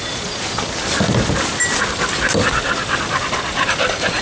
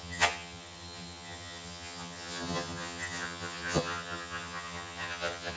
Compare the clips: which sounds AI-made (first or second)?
second